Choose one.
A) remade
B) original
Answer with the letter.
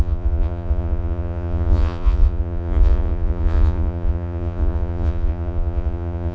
A